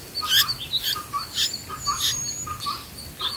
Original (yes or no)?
yes